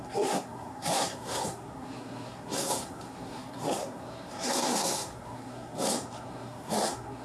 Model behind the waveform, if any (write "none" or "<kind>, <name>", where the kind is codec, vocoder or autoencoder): codec, SNAC